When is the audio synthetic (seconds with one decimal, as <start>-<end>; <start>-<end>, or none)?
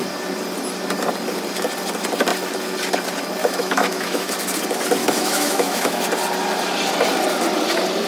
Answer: 3.4-4.3; 5.0-6.0